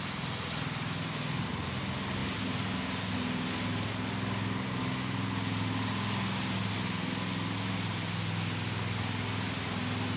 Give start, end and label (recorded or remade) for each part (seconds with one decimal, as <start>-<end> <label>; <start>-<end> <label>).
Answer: 0.0-10.2 recorded

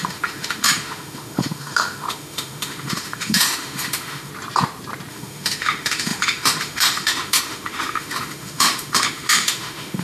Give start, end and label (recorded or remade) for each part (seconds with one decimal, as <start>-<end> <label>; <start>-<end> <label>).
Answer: 0.0-4.3 remade; 4.3-5.1 recorded; 5.1-10.0 remade

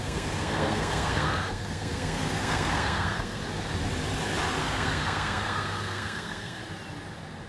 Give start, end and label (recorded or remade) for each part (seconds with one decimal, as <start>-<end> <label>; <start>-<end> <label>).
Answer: 0.0-3.4 remade; 3.4-4.6 recorded; 4.6-6.6 remade; 6.6-7.5 recorded